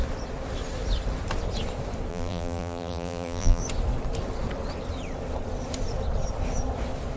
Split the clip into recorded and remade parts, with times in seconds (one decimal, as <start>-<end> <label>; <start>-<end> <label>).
0.0-2.1 recorded; 2.1-3.6 remade; 3.6-7.2 recorded